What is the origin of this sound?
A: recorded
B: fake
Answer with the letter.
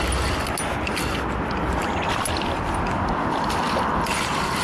A